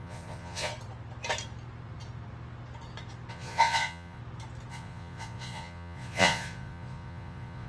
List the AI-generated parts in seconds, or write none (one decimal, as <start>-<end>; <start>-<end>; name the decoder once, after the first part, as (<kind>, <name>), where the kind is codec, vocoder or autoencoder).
0.0-0.7 (vocoder, Vocos); 3.3-4.2; 4.7-7.7